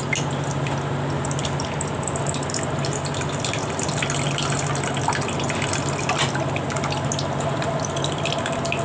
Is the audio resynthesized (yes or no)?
no